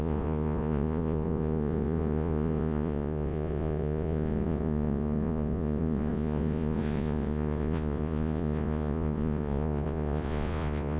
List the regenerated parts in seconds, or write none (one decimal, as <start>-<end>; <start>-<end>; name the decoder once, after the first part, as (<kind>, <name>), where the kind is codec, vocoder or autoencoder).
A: 0.0-11.0 (vocoder, Vocos)